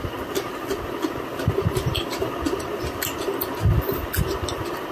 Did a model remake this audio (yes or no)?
no